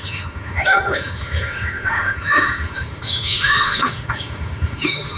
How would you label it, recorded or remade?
remade